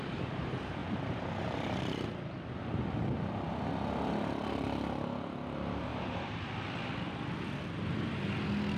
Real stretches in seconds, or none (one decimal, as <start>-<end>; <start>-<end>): 0.0-0.8; 2.8-5.9; 6.5-8.8